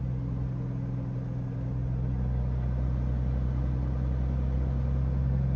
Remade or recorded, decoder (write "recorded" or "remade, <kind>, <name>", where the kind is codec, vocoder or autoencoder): recorded